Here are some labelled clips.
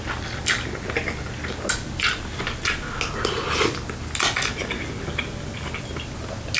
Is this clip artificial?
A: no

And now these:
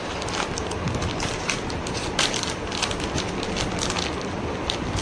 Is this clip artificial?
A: no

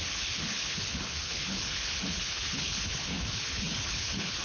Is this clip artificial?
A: yes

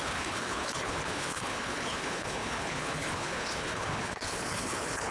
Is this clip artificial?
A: yes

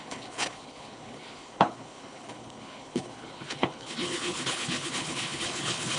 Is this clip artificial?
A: yes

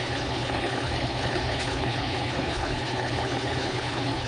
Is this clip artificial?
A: yes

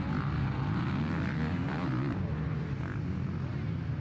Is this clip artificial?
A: no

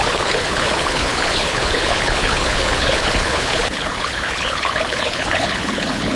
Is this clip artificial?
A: yes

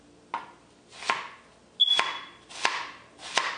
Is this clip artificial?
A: no